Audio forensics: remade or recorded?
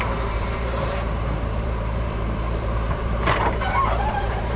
remade